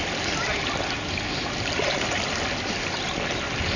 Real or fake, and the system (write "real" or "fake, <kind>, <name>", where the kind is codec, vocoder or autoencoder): real